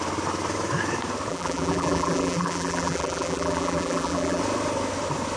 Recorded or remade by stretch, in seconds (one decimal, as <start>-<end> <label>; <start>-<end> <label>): 0.0-1.3 recorded; 1.3-4.4 remade; 4.4-5.4 recorded